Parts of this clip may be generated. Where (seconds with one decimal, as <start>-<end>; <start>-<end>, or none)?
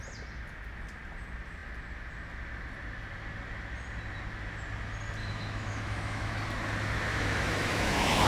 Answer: 5.2-6.4; 7.1-8.3